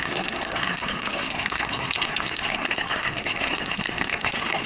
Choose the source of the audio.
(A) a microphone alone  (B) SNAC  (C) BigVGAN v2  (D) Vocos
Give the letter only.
B